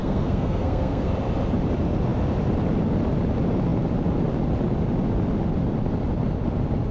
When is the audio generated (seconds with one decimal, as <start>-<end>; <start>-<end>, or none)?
0.0-1.1